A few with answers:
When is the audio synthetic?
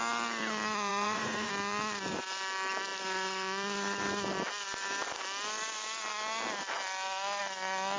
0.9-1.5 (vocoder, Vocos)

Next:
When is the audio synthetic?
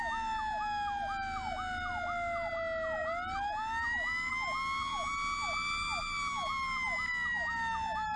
none